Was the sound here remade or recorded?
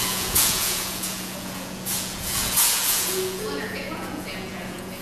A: remade